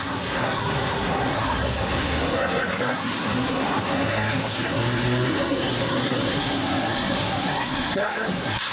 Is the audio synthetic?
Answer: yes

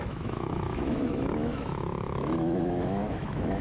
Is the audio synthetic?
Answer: yes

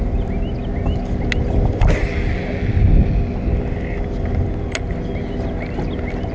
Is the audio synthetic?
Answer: no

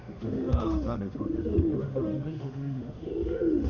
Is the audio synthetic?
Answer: yes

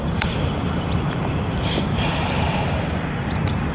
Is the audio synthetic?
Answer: yes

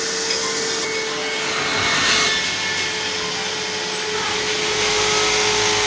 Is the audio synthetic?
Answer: no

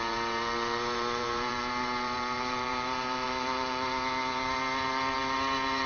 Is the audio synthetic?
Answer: yes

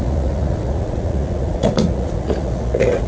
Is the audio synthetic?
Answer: yes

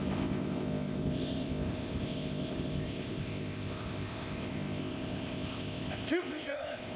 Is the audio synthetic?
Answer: yes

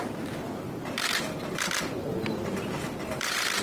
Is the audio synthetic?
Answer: yes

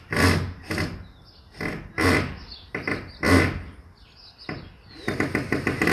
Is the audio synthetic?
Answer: no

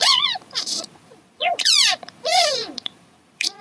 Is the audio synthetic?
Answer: yes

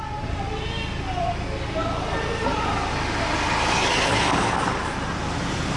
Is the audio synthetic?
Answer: no